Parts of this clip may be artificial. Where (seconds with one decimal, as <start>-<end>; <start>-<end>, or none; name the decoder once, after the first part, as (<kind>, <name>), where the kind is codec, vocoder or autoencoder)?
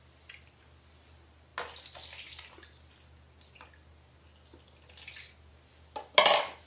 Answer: none